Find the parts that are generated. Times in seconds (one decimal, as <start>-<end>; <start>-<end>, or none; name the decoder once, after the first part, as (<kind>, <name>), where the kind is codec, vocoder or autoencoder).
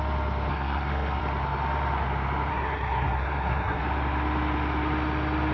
0.5-1.2 (codec, SNAC); 2.5-3.8